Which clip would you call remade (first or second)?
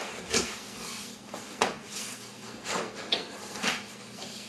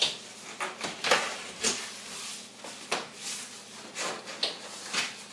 first